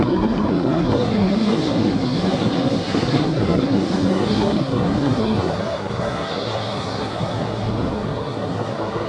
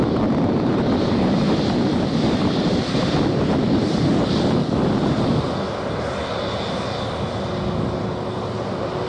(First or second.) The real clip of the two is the second